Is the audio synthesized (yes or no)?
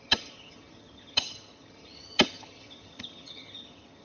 yes